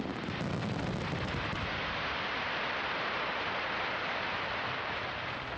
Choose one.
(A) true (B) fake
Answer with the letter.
B